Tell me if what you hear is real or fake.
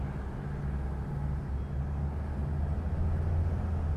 real